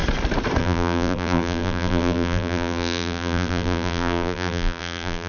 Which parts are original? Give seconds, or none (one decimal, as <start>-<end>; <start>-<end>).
0.0-0.6